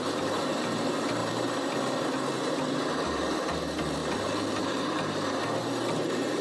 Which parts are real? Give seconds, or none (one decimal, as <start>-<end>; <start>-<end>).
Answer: 4.0-4.6